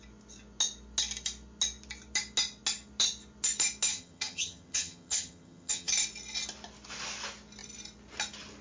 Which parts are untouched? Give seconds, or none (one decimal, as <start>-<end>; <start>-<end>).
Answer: 0.0-3.9; 5.9-8.6